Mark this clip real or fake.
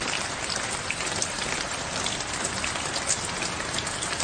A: real